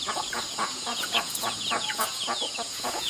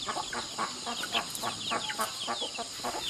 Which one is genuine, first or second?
second